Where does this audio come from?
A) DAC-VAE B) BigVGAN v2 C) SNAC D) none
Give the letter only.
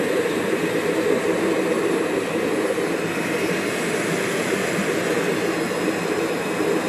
D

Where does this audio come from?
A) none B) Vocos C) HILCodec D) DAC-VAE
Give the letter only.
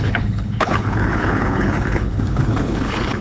C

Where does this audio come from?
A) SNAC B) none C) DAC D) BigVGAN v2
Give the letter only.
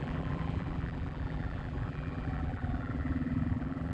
D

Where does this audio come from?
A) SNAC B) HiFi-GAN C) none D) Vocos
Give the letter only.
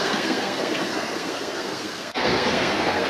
A